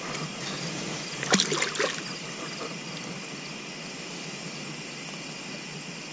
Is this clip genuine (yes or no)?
yes